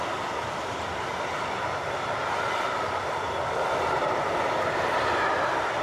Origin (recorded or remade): recorded